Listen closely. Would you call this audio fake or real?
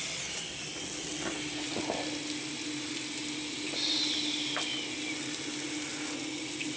real